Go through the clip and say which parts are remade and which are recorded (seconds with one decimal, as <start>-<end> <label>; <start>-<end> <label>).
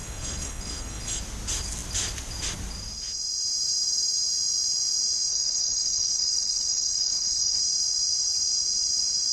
0.0-1.2 remade; 1.2-5.3 recorded; 5.3-7.6 remade; 7.6-9.3 recorded